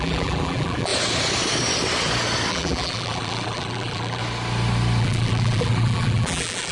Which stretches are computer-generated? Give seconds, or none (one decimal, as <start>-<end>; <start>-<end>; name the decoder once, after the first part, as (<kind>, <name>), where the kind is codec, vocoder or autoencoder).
0.0-0.9 (vocoder, BigVGAN v2); 2.5-4.2; 5.0-6.7